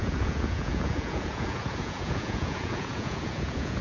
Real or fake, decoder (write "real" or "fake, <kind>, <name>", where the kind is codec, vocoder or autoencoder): fake, vocoder, Vocos